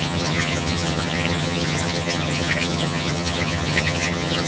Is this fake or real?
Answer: fake